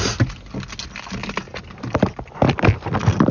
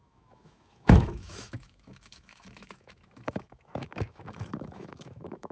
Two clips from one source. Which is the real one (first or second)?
first